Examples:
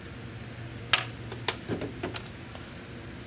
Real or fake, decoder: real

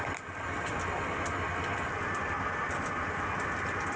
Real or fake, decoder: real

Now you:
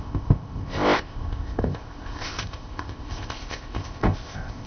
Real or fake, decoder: fake, codec, ZipCodec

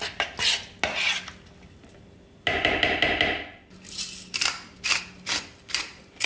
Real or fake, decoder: real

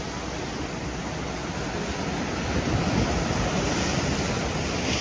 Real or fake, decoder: real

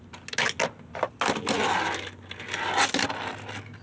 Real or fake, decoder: real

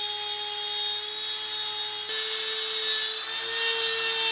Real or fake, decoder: real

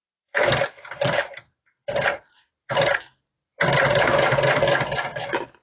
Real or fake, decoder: real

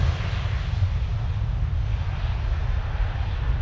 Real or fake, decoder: real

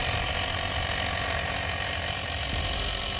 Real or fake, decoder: real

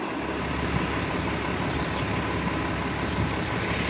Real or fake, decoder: real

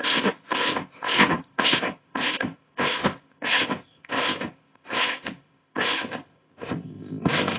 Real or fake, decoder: fake, codec, ZipCodec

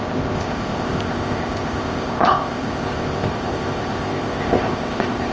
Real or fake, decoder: fake, codec, ZipCodec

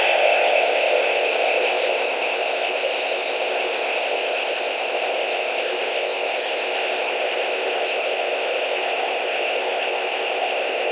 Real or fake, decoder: fake, codec, ZipCodec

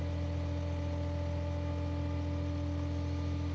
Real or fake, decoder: real